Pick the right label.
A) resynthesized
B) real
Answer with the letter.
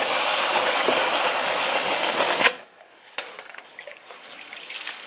A